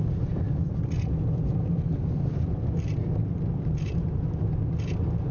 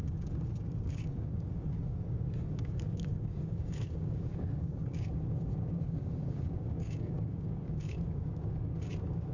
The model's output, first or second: second